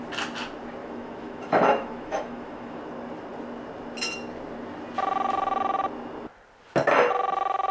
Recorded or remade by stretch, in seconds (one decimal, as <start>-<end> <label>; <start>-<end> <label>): 0.0-0.8 recorded; 0.8-2.8 remade; 2.8-7.7 recorded